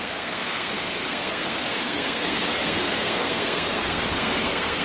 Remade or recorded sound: remade